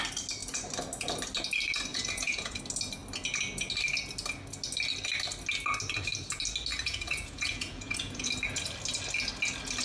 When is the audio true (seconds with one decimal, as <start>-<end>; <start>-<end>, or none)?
0.0-1.9; 2.6-6.7; 8.3-9.8